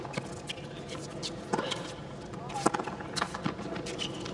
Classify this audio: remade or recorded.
recorded